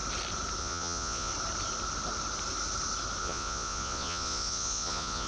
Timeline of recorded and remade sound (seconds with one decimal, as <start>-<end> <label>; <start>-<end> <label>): 0.0-0.6 recorded; 0.6-1.3 remade; 1.3-3.2 recorded; 3.2-5.3 remade